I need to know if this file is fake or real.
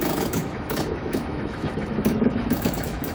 fake